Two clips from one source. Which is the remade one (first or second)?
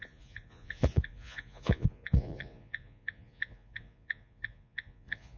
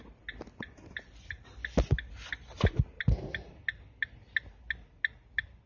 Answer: first